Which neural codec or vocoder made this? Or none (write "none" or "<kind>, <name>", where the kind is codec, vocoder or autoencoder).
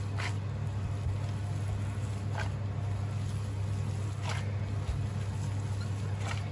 none